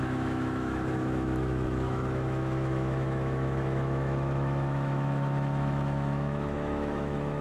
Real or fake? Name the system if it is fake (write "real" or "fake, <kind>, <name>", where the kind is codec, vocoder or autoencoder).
fake, autoencoder, DAC-VAE